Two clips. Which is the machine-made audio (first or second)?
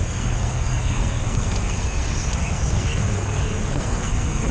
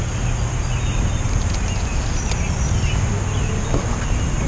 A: first